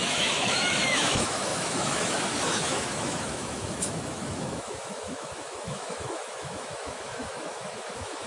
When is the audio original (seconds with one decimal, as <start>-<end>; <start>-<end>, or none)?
none